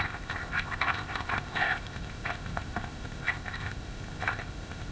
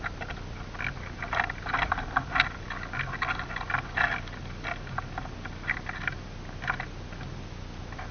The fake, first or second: first